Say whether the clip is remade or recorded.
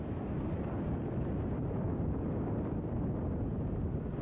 recorded